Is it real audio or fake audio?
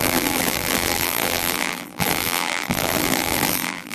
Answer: fake